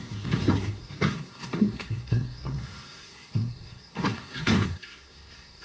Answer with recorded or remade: remade